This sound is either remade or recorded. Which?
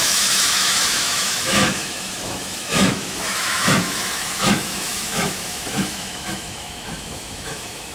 remade